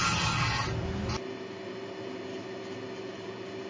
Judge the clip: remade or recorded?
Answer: recorded